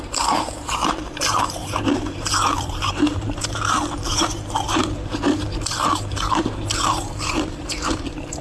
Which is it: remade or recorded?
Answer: remade